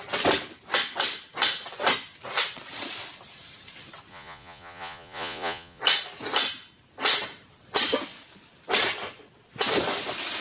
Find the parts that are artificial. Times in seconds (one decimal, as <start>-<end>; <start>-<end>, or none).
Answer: 4.1-5.8